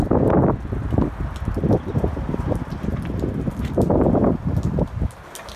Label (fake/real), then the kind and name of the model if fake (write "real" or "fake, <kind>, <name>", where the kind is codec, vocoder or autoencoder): real